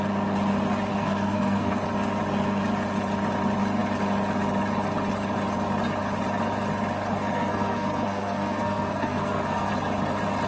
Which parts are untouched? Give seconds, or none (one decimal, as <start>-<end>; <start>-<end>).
0.0-0.9; 1.7-7.1; 9.7-10.5